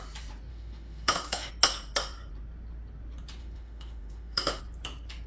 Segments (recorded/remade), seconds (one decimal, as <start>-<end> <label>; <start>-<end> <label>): 0.0-0.5 recorded; 0.5-1.5 remade; 1.5-3.4 recorded; 3.4-4.6 remade; 4.6-5.3 recorded